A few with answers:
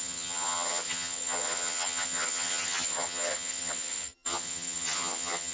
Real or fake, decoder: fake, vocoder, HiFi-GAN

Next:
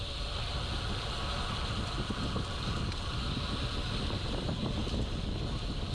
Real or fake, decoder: real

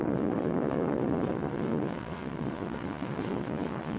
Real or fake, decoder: fake, vocoder, Vocos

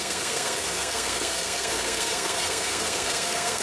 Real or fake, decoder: fake, codec, SNAC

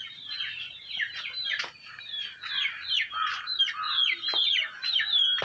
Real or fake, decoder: real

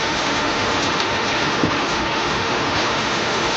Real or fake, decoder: fake, autoencoder, DAC-VAE